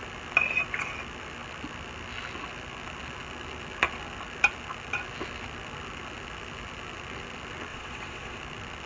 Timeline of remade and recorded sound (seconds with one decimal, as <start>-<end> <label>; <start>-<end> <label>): 0.0-7.7 recorded; 7.7-8.4 remade; 8.4-8.9 recorded